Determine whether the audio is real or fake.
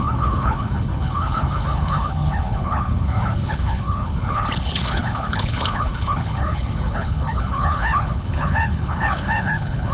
fake